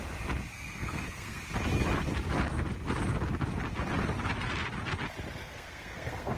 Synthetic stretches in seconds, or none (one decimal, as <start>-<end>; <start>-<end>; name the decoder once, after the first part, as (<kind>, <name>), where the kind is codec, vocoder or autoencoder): 0.5-1.4 (codec, SNAC); 5.4-6.4